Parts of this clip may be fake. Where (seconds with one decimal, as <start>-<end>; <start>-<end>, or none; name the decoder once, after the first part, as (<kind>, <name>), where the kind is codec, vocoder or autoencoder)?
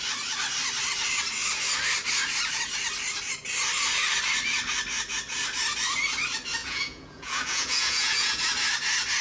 6.6-8.4 (vocoder, Vocos)